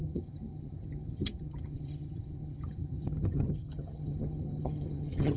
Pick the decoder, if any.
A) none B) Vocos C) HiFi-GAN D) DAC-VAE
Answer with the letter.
C